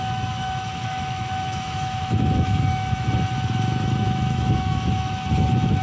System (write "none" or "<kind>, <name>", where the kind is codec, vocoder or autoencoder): autoencoder, DAC-VAE